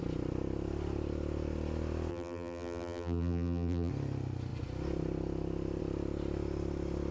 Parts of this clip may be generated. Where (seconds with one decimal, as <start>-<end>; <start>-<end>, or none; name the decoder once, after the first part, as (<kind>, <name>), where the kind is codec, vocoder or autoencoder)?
2.1-3.9 (vocoder, BigVGAN v2)